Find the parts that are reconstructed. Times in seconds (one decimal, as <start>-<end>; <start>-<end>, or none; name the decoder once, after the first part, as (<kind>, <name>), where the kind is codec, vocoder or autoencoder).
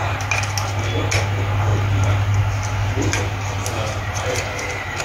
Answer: none